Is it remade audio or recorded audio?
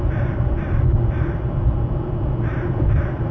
recorded